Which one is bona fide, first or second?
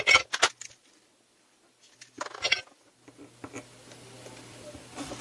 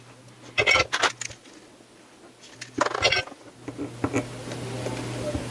second